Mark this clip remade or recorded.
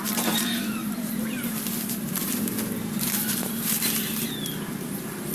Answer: remade